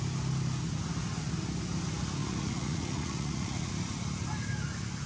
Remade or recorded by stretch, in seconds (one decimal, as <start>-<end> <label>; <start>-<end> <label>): 0.0-2.2 recorded; 2.2-3.7 remade; 3.7-5.1 recorded